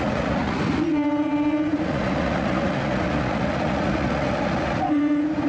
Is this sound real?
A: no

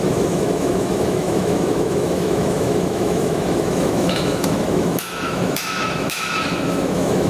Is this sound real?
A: no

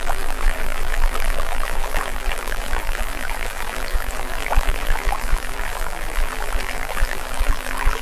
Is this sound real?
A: no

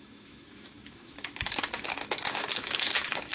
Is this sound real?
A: no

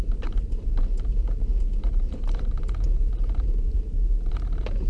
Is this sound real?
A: no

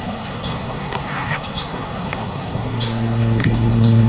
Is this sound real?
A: no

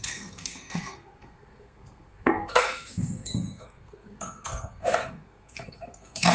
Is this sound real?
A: no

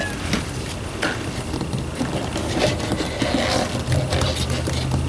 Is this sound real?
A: yes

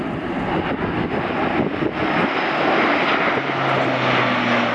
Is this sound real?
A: yes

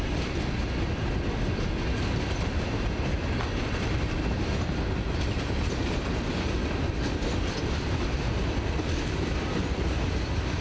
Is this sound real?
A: yes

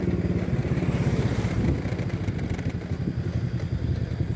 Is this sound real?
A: yes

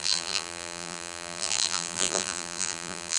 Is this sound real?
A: no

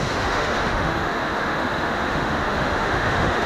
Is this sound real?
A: no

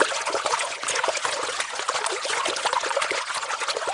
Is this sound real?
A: no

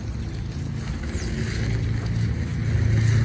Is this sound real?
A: yes